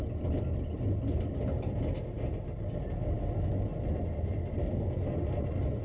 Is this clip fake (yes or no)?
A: no